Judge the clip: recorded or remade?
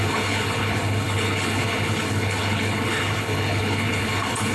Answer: remade